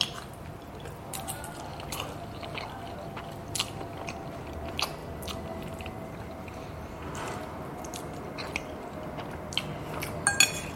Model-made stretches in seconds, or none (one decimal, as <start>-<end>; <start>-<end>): 1.7-4.1; 5.0-7.8